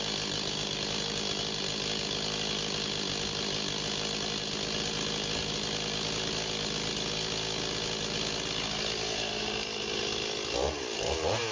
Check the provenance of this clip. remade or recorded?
recorded